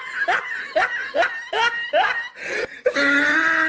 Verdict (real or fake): real